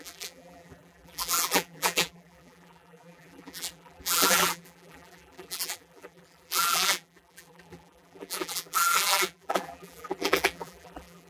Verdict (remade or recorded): remade